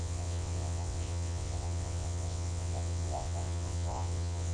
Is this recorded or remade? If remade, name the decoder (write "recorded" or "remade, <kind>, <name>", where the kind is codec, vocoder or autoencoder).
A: remade, vocoder, WaveNeXt